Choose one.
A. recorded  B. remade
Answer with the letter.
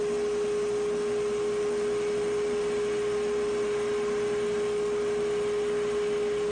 A